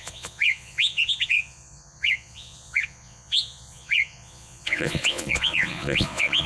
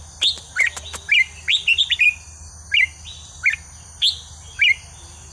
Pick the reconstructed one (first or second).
first